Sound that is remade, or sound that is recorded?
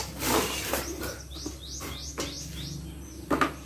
recorded